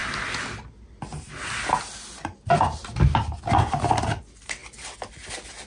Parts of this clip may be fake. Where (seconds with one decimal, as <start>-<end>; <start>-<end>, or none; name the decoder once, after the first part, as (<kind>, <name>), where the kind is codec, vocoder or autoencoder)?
4.6-5.1 (vocoder, BigVGAN v2)